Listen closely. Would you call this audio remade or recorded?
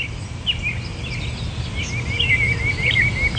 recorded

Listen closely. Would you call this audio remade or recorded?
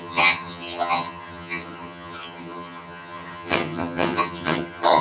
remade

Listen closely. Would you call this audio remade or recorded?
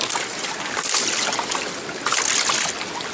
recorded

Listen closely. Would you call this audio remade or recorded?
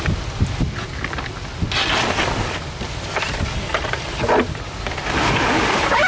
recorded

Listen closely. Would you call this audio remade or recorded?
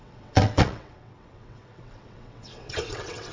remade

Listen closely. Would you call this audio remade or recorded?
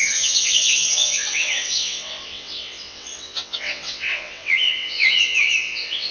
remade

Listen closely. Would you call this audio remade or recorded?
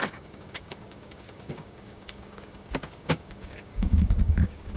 remade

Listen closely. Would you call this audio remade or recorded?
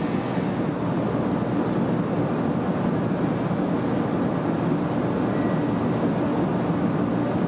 recorded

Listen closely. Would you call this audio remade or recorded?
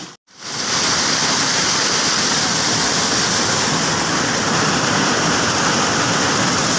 recorded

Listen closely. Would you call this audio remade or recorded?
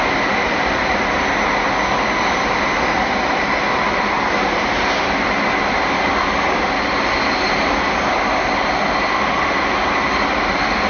recorded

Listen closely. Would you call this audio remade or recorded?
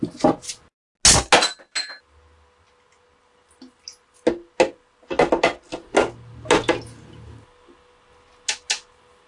recorded